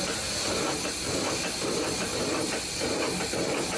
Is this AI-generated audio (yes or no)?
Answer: no